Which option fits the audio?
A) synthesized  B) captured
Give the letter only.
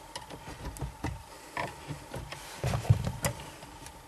B